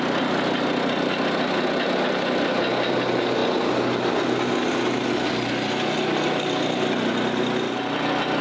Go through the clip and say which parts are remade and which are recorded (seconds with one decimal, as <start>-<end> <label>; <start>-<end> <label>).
0.0-8.4 recorded